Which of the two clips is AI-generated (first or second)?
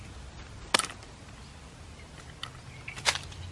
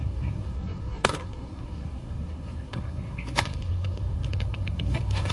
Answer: second